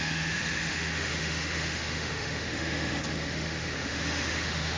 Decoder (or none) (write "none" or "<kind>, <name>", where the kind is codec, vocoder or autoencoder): autoencoder, DAC-VAE